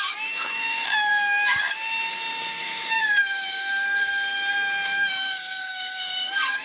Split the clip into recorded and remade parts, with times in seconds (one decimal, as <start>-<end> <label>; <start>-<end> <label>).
0.0-6.6 remade